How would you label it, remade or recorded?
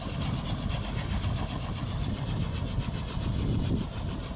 recorded